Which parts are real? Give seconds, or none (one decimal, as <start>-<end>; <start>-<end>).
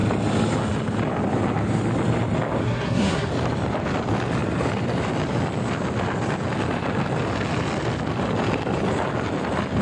0.0-2.6; 3.3-9.8